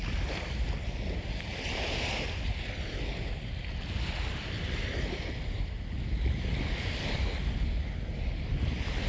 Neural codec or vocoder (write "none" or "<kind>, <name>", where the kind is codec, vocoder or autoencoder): none